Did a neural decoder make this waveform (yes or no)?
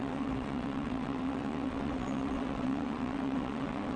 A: yes